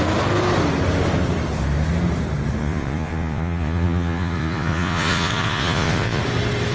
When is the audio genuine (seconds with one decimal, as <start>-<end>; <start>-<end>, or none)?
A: 0.0-2.6; 6.2-6.7